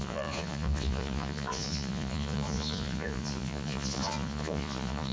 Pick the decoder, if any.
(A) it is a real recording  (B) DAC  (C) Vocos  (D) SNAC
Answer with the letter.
C